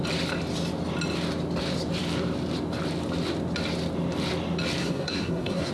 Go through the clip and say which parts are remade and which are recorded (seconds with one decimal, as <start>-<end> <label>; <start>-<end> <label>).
0.0-4.8 recorded; 4.8-5.7 remade